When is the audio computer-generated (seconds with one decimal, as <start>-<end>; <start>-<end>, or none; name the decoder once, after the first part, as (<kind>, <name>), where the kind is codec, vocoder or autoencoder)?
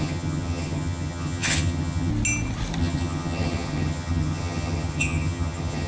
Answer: 0.0-2.1 (vocoder, HiFi-GAN); 2.8-5.9